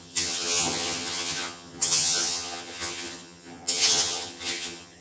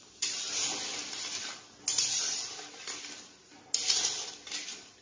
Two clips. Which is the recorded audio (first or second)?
second